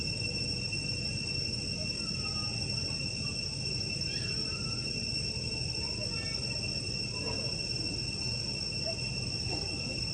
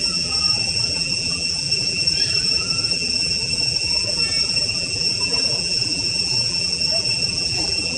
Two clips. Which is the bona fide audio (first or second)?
first